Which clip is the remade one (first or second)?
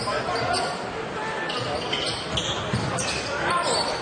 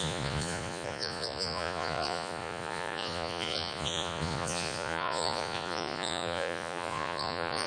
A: second